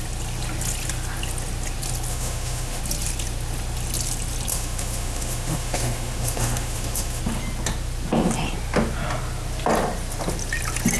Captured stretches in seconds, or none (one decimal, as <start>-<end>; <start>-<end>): 0.0-2.1; 2.8-4.5; 7.2-11.0